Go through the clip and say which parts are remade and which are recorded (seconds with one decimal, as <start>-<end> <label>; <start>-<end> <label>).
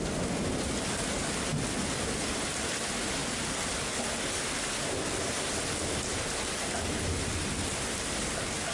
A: 0.0-8.7 recorded